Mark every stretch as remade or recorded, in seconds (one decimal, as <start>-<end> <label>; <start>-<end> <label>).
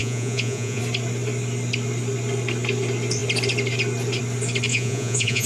0.0-0.8 remade; 0.8-4.7 recorded; 4.7-5.5 remade